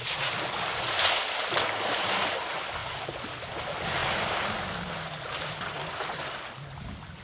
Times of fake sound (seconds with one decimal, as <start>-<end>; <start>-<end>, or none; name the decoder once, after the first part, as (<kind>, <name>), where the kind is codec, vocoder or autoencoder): none

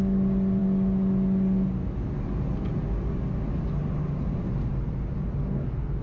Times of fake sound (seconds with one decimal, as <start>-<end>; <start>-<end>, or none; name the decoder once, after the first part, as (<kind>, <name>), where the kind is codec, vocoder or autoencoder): none

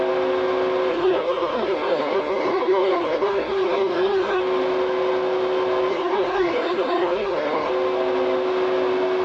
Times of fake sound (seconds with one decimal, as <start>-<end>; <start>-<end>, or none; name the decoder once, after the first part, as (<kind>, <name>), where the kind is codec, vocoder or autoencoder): 0.9-4.4 (codec, SNAC); 5.9-7.7

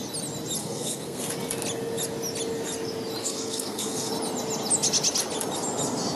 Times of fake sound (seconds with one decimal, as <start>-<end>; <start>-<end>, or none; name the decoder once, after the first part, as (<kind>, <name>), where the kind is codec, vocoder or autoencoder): 0.6-1.3 (codec, SNAC); 3.2-4.1

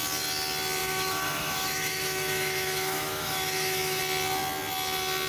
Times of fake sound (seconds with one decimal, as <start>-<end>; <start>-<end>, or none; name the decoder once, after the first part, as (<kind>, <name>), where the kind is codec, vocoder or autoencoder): 0.8-4.0 (autoencoder, DAC-VAE)

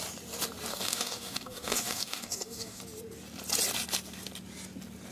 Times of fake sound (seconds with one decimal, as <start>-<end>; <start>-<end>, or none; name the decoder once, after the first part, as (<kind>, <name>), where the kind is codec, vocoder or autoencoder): 0.7-2.8 (codec, DAC)

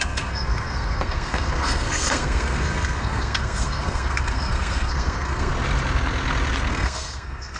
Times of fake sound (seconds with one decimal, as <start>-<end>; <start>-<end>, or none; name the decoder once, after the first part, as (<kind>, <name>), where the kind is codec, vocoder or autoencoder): 0.0-5.5 (codec, SNAC); 6.7-7.6

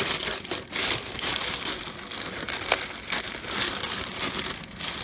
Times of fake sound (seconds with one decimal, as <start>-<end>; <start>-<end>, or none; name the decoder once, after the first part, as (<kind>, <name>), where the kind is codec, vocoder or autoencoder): none